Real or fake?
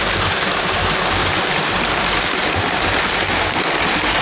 real